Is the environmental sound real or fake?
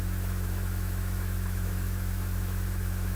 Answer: fake